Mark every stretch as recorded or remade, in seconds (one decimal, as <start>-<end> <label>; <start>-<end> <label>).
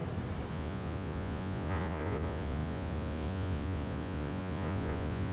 0.0-0.5 recorded; 0.5-5.3 remade